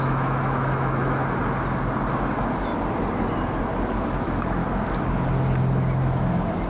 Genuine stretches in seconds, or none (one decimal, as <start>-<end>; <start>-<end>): 1.2-2.1; 2.7-3.9; 4.6-6.0